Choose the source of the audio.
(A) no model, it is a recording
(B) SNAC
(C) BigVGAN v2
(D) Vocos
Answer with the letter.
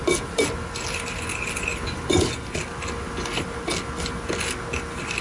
A